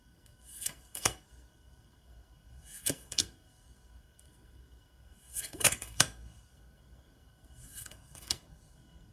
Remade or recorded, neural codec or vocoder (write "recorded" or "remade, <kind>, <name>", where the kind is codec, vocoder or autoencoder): remade, codec, SNAC